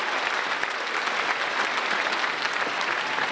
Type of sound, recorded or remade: recorded